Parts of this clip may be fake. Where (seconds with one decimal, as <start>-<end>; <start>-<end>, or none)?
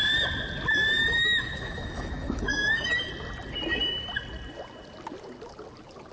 1.0-3.1